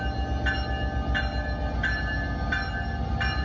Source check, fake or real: real